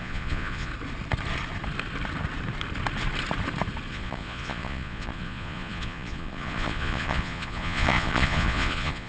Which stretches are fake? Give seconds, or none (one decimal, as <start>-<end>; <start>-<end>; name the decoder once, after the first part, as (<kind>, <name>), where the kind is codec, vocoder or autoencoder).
0.0-0.7 (vocoder, Vocos); 3.9-9.1